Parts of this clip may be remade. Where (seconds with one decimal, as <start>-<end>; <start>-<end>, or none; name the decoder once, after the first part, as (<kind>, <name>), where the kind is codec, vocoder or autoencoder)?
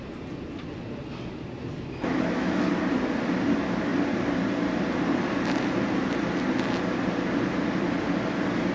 1.7-2.6 (autoencoder, DAC-VAE)